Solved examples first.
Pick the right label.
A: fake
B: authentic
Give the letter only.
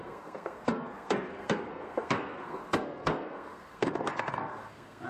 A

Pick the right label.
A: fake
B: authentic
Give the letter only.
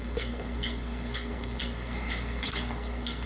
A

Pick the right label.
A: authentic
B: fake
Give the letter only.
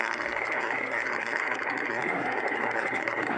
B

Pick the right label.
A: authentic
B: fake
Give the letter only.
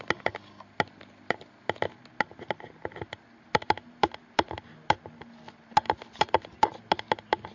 A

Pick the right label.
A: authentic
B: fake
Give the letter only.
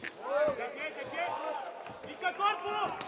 A